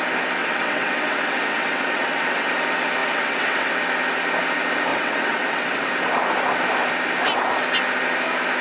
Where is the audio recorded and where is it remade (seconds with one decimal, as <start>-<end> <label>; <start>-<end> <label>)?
0.0-0.4 recorded; 0.4-2.5 remade; 2.5-3.0 recorded; 3.0-3.7 remade; 3.7-4.9 recorded; 4.9-5.9 remade; 5.9-8.6 recorded